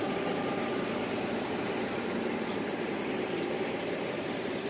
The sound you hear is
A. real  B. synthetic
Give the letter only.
B